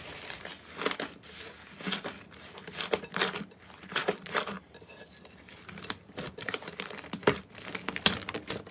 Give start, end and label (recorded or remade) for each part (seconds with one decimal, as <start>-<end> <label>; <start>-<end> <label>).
0.0-0.5 remade; 0.5-3.1 recorded; 3.1-8.7 remade